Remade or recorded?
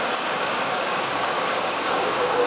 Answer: remade